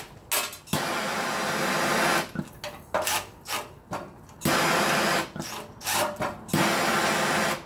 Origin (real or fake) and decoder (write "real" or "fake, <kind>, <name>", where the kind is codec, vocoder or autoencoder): real